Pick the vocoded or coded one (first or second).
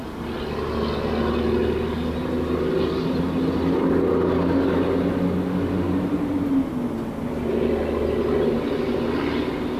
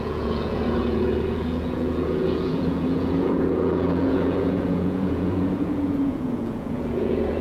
second